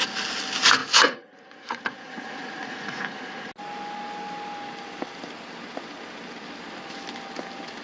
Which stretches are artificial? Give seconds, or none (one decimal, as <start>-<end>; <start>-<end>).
0.8-3.5